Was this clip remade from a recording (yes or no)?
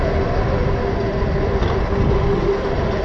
no